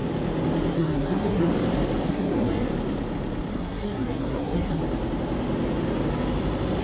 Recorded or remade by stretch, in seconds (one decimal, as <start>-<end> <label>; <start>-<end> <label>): 0.0-0.7 recorded; 0.7-1.5 remade; 1.5-2.1 recorded; 2.1-2.7 remade; 2.7-3.5 recorded; 3.5-4.8 remade; 4.8-6.8 recorded